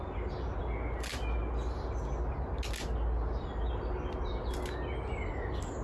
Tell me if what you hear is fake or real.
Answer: real